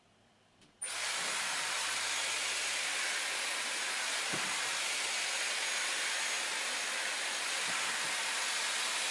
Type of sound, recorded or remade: recorded